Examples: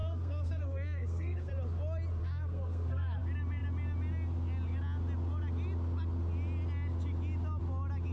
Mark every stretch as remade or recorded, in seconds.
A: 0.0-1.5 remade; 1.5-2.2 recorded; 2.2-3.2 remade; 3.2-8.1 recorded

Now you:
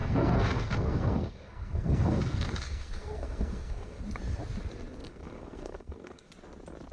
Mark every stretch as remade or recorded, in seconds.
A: 0.0-4.0 remade; 4.0-5.0 recorded; 5.0-6.3 remade; 6.3-6.9 recorded

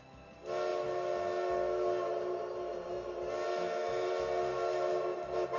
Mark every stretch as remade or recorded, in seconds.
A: 0.0-5.6 recorded

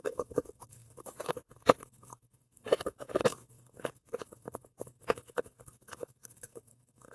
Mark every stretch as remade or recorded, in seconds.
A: 0.0-7.1 remade

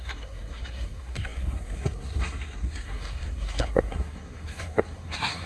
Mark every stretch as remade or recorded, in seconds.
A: 0.0-5.5 remade